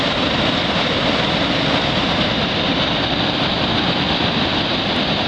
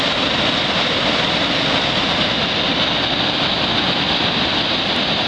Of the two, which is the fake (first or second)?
first